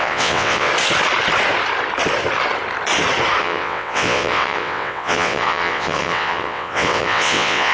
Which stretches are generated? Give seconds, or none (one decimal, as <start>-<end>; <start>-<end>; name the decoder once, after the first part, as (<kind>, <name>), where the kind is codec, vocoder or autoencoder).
0.0-0.7 (vocoder, WaveNeXt); 3.4-7.7